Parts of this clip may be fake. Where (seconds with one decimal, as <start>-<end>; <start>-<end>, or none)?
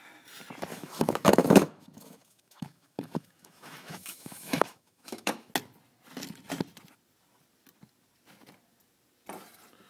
0.7-5.5